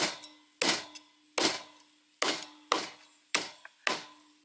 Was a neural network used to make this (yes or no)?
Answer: no